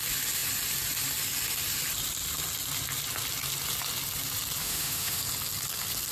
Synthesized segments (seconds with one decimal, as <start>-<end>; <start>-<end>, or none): 4.6-5.2